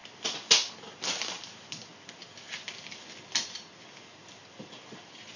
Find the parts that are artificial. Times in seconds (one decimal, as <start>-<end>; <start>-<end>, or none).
none